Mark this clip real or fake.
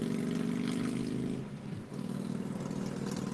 real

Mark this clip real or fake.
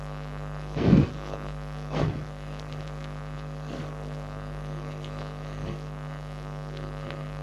fake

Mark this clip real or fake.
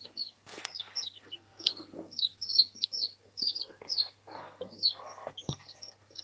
fake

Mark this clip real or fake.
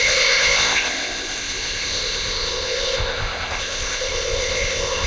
fake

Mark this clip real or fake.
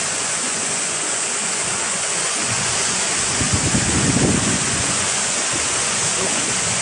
fake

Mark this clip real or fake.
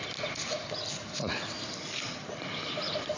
real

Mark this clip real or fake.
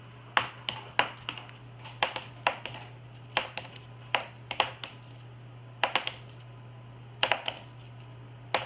real